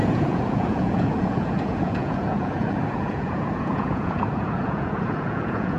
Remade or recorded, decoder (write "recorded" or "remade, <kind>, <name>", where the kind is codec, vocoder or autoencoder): remade, vocoder, Vocos